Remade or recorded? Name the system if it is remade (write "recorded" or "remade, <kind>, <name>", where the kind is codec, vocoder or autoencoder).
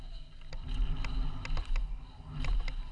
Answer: recorded